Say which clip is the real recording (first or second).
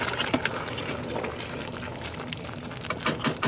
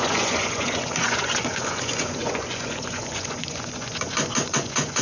first